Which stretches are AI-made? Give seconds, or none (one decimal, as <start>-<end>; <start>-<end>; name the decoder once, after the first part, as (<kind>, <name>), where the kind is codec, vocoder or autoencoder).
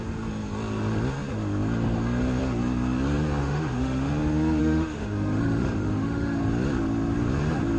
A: 3.4-4.1 (autoencoder, DAC-VAE); 4.6-6.4